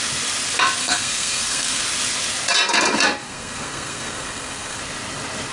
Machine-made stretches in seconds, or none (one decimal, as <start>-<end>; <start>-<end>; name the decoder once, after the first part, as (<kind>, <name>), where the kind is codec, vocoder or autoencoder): 0.8-1.8 (codec, SNAC); 3.2-4.8